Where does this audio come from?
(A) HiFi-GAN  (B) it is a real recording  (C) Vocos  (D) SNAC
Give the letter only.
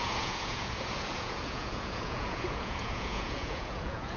C